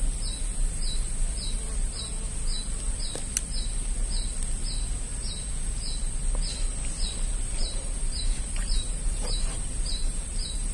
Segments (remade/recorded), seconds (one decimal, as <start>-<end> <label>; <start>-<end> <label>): 0.0-7.6 recorded; 7.6-10.7 remade

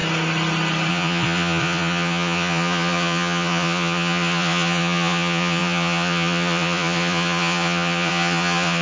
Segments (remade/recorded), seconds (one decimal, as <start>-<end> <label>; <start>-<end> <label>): 0.0-0.9 recorded; 0.9-8.8 remade

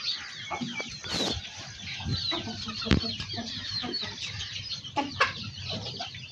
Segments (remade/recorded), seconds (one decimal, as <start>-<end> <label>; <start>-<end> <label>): 0.0-2.1 recorded; 2.1-4.4 remade; 4.4-6.3 recorded

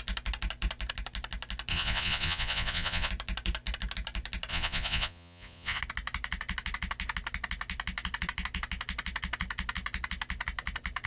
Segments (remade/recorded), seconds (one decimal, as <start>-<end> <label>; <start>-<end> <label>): 0.0-1.7 recorded; 1.7-3.1 remade; 3.1-4.5 recorded; 4.5-5.8 remade; 5.8-11.1 recorded

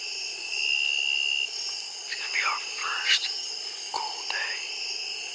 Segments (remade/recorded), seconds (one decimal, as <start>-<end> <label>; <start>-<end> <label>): 0.0-2.8 recorded; 2.8-3.5 remade; 3.5-5.3 recorded